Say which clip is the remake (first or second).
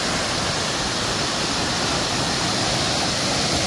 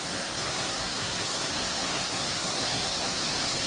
second